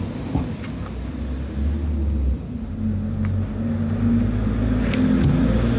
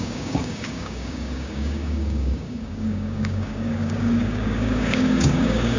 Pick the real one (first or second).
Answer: first